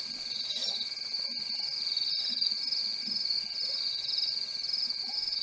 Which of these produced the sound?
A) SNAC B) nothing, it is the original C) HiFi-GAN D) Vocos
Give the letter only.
B